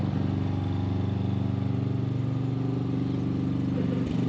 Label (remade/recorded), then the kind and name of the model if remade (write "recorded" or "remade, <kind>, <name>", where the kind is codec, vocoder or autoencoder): recorded